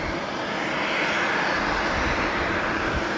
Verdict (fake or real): real